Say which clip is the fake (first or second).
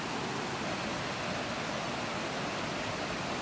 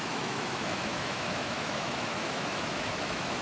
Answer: second